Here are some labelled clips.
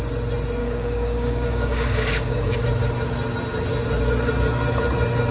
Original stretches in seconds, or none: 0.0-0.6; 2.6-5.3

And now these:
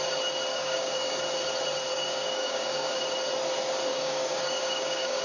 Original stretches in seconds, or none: 0.0-0.5; 1.2-1.9; 2.9-3.9

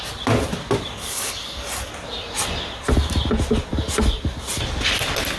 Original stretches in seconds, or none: 0.0-1.0; 1.9-5.4